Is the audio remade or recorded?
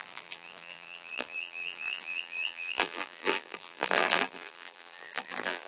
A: remade